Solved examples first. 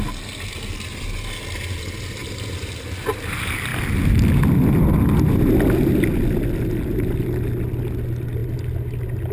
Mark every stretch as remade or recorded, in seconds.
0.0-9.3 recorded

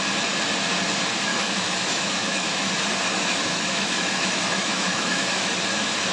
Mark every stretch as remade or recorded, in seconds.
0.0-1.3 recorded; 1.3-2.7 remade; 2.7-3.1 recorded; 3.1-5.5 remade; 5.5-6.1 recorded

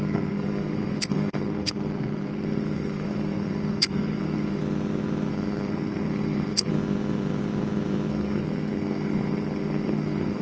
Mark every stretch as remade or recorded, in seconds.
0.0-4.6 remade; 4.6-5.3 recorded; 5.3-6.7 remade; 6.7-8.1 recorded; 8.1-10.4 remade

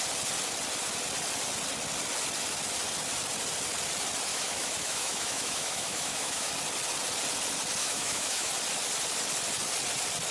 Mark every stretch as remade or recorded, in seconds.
0.0-4.3 recorded; 4.3-6.5 remade; 6.5-7.8 recorded; 7.8-8.5 remade; 8.5-10.3 recorded

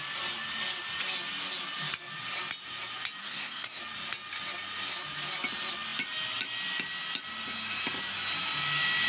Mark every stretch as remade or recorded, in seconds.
0.0-3.2 recorded; 3.2-3.8 remade; 3.8-9.1 recorded

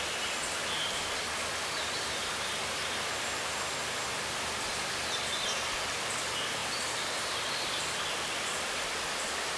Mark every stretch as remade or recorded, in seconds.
0.0-6.6 recorded; 6.6-7.3 remade; 7.3-9.6 recorded

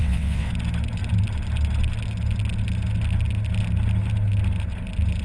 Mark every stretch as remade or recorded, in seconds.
0.0-0.5 remade; 0.5-5.2 recorded

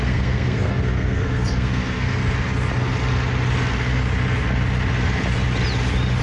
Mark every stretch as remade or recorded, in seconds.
0.0-2.2 remade; 2.2-6.2 recorded